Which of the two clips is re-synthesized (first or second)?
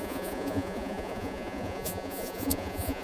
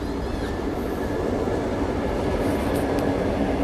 first